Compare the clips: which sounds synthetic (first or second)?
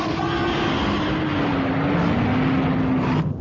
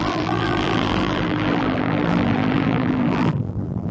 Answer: second